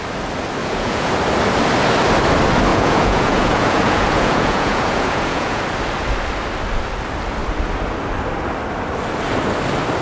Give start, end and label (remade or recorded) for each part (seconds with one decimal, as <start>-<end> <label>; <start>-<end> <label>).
0.0-0.6 recorded; 0.6-1.1 remade; 1.1-2.7 recorded; 2.7-5.6 remade; 5.6-10.0 recorded